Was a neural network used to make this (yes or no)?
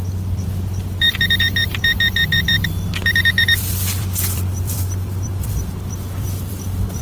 yes